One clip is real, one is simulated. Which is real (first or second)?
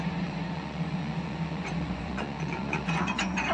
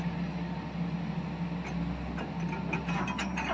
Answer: second